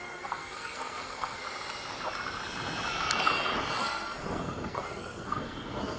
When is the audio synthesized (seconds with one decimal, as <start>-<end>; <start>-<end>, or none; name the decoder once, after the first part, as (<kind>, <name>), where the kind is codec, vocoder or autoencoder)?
0.0-1.4 (codec, SNAC); 3.8-6.0